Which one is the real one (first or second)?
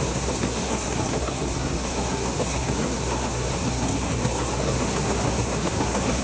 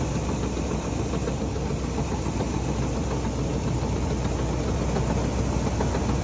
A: second